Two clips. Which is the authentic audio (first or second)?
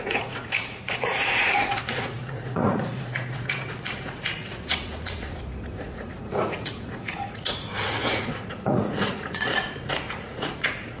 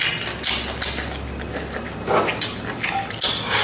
second